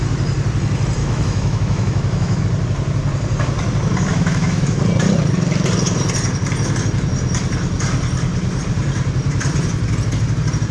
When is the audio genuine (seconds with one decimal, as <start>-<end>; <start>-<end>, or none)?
0.0-1.0; 2.4-4.1; 4.8-10.7